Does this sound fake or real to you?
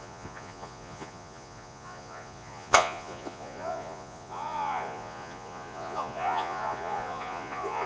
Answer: fake